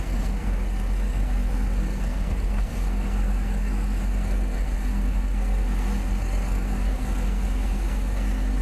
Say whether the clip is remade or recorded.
remade